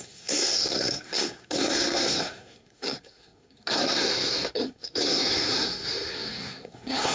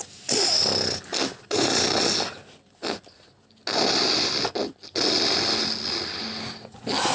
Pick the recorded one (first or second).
second